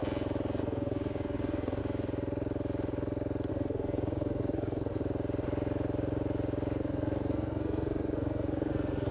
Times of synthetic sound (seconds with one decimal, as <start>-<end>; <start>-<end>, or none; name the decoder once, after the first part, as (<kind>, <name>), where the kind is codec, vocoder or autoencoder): 0.6-1.8 (codec, SNAC); 3.5-5.0; 6.8-9.1